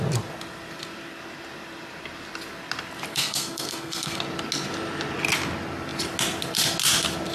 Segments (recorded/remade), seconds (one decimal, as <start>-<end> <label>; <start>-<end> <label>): 0.0-3.1 recorded; 3.1-4.2 remade; 4.2-7.3 recorded